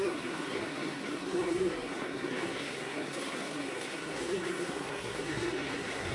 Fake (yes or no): yes